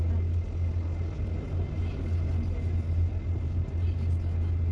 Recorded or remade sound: recorded